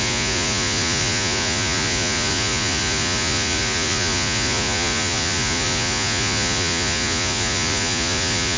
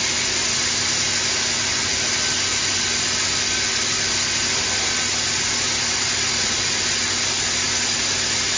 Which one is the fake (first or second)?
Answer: first